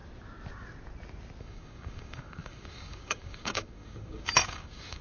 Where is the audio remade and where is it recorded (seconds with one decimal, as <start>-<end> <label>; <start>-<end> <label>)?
0.0-1.4 recorded; 1.4-5.0 remade